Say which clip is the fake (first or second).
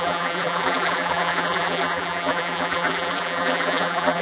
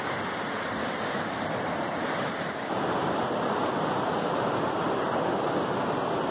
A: first